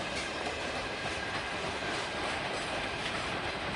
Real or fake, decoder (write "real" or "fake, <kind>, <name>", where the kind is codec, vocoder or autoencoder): fake, vocoder, BigVGAN v2